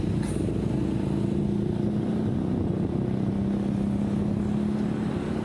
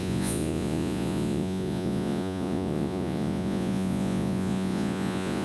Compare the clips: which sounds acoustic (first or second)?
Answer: first